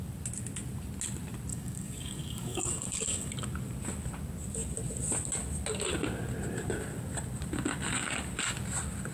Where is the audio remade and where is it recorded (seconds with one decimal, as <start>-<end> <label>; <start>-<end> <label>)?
0.0-1.5 recorded; 1.5-3.3 remade; 3.3-9.1 recorded